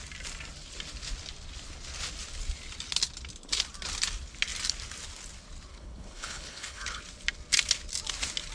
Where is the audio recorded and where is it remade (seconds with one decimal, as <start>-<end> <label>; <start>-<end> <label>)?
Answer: 0.0-5.7 recorded; 5.7-7.0 remade; 7.0-8.5 recorded